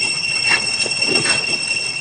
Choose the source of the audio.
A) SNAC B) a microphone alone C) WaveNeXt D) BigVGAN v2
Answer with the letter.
C